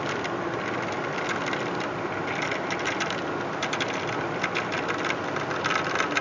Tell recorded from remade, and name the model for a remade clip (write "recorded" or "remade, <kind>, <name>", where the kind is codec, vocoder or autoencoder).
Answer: recorded